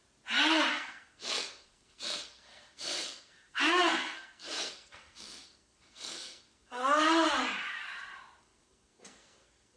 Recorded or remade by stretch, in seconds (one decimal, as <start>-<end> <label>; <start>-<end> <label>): 0.0-0.7 recorded; 0.7-6.8 remade; 6.8-8.4 recorded; 8.4-9.8 remade